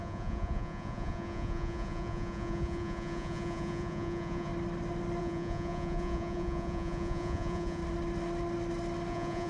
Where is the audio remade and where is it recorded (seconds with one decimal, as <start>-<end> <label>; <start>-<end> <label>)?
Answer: 0.0-4.5 remade; 4.5-5.2 recorded; 5.2-7.8 remade; 7.8-9.1 recorded; 9.1-9.5 remade